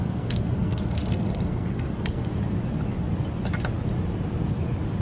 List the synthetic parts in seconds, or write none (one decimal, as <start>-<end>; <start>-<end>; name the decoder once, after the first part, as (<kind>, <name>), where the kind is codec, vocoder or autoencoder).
0.0-2.3 (codec, SNAC)